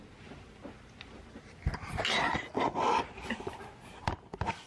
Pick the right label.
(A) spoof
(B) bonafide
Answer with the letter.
B